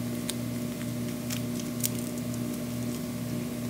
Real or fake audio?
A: real